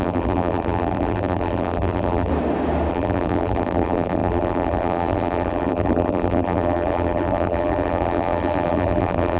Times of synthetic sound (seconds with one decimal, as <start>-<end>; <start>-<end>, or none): 0.0-2.3; 2.9-9.4